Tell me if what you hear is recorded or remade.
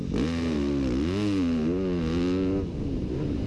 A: recorded